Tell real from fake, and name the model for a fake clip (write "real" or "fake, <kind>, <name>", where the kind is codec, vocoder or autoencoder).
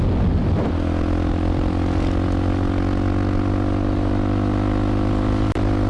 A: real